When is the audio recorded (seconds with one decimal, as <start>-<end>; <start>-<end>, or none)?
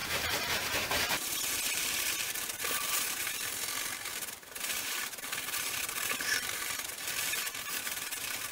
none